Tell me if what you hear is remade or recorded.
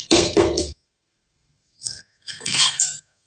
remade